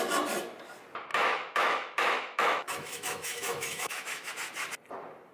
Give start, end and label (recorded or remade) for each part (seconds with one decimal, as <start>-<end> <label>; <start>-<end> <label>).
0.0-1.1 recorded; 1.1-4.3 remade; 4.3-5.3 recorded